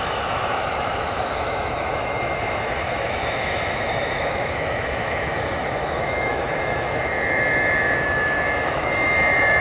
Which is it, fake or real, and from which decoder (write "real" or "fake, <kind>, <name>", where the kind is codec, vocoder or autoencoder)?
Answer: fake, autoencoder, DAC-VAE